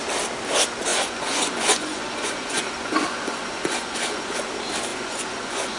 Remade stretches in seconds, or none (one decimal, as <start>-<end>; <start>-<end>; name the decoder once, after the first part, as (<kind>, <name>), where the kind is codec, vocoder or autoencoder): 0.9-4.4 (vocoder, Vocos); 4.9-5.8